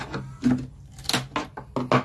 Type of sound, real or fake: real